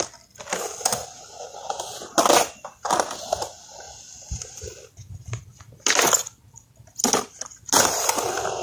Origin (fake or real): real